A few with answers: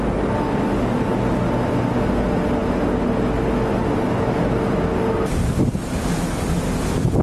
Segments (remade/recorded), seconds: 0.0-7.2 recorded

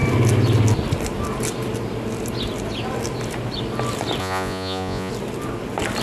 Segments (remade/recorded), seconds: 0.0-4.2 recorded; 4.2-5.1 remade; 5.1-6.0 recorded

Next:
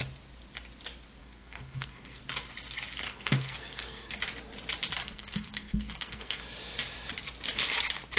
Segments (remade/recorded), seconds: 0.0-1.2 recorded; 1.2-2.2 remade; 2.2-3.1 recorded; 3.1-4.2 remade; 4.2-5.0 recorded; 5.0-6.4 remade; 6.4-8.2 recorded